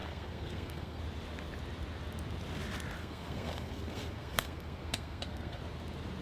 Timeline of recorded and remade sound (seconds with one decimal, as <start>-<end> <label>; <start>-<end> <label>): 0.0-1.0 remade; 1.0-3.0 recorded; 3.0-5.6 remade; 5.6-6.2 recorded